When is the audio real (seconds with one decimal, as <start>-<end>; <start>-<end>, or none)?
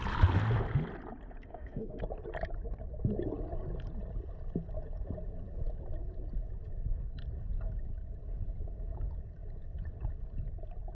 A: 0.0-1.5; 2.0-10.9